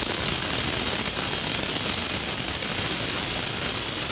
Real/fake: real